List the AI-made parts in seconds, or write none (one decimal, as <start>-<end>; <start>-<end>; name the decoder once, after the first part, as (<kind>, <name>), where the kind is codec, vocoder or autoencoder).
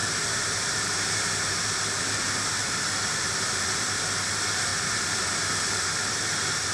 0.0-4.0 (vocoder, BigVGAN v2); 4.7-6.3